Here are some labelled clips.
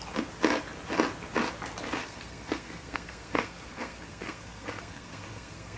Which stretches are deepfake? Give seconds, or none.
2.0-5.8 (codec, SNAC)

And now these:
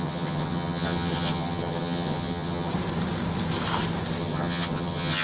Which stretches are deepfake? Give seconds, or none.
0.0-2.7 (vocoder, HiFi-GAN); 4.2-5.2